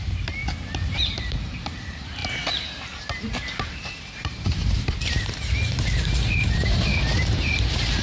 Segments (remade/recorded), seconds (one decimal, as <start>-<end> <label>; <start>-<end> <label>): 0.0-0.4 remade; 0.4-1.0 recorded; 1.0-8.0 remade